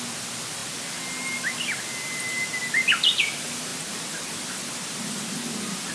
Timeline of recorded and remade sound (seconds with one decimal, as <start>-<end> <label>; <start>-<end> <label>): 0.0-5.9 recorded